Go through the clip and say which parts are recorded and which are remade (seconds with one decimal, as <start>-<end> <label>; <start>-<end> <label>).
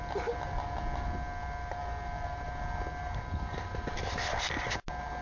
0.0-5.2 recorded